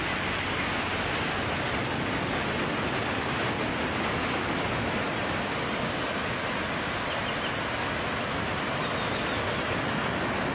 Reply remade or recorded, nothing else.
recorded